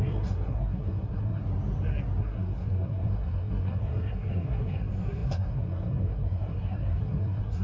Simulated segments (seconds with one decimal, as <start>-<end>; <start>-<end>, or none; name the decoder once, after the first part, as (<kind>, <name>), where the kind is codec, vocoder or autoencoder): 0.0-1.4 (codec, SNAC); 2.2-7.6